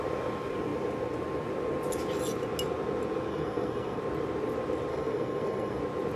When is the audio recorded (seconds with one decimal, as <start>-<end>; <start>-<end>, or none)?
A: 0.0-3.3; 4.0-4.9; 5.8-6.2